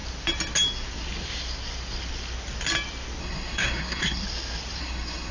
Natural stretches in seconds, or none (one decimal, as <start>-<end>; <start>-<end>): 0.0-3.2; 4.2-4.8